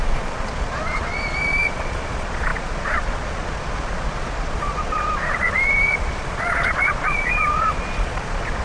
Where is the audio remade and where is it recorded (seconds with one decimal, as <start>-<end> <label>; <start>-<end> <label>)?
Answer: 0.0-8.6 remade